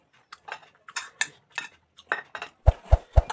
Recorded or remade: recorded